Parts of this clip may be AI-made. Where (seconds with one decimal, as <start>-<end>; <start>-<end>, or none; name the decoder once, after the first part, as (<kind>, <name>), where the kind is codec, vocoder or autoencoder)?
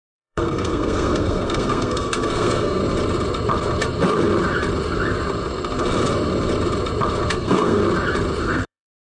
0.0-2.8 (codec, SNAC); 7.3-7.8; 8.4-9.2